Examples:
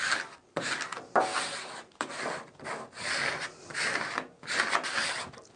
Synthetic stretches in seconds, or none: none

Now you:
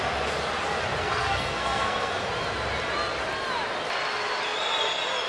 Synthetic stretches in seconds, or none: 1.0-2.1 (codec, SNAC)